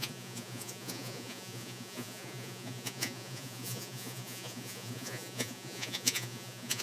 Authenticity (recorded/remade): remade